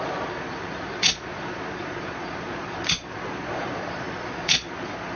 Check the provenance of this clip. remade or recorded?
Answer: remade